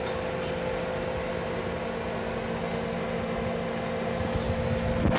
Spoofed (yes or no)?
no